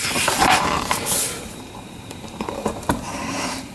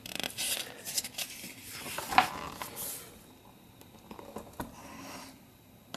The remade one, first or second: first